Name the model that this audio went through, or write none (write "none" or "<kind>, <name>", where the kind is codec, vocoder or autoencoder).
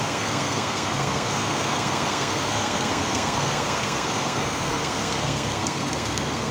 codec, SNAC